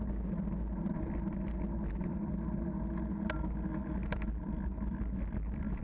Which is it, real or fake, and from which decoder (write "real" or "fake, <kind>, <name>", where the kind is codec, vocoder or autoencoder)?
real